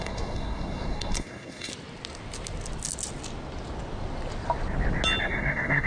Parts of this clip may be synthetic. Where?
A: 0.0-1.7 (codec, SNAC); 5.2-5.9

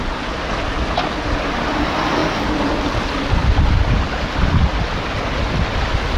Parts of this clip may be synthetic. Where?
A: none

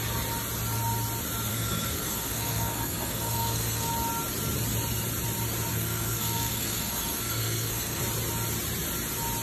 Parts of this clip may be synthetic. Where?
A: 1.5-3.9 (codec, SNAC); 5.7-8.0